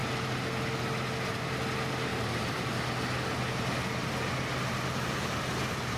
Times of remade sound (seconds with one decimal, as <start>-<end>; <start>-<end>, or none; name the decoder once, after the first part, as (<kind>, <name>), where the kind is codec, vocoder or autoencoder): 2.1-2.7 (vocoder, BigVGAN v2)